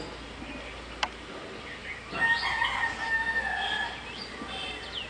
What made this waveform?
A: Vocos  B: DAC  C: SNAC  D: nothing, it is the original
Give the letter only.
D